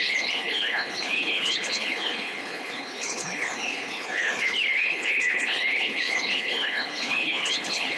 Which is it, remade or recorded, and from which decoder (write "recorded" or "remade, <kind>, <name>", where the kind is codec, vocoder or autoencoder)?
remade, codec, HILCodec